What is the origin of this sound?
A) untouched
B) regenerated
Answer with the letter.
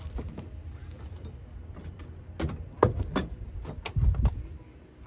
A